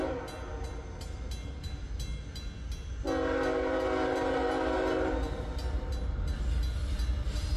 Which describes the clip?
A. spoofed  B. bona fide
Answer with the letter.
B